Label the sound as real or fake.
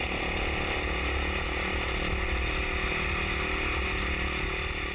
real